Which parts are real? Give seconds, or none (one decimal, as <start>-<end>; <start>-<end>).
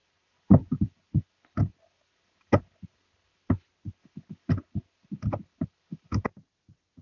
0.0-7.0